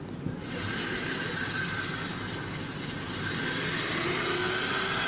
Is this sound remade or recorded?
recorded